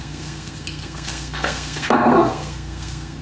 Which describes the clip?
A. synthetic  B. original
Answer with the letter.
A